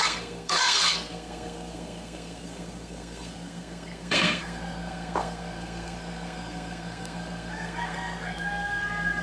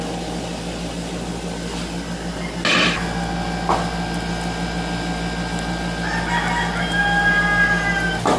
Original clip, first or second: second